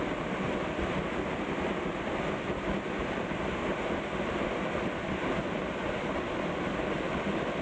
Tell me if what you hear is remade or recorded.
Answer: recorded